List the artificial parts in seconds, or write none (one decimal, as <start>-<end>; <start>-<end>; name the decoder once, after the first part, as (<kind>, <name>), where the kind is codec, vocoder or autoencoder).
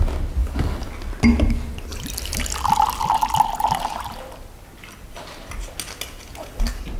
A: 0.4-0.9 (codec, DAC)